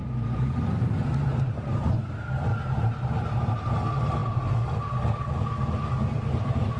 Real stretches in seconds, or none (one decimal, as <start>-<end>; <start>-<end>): 1.9-2.5; 3.7-6.8